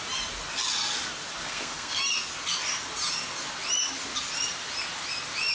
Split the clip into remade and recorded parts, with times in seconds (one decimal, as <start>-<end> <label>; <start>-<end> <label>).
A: 0.0-1.4 recorded; 1.4-2.0 remade; 2.0-5.5 recorded